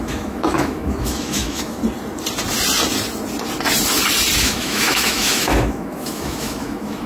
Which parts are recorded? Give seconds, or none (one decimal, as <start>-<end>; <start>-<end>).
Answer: 1.8-4.4